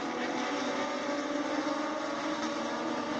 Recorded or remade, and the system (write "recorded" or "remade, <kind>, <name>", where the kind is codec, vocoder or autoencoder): recorded